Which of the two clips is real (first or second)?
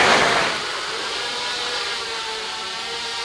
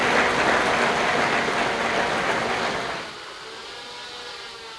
second